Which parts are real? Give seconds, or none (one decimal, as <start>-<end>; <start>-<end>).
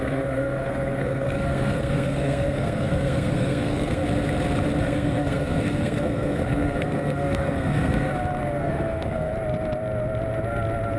4.0-4.8; 8.1-8.6; 9.3-11.0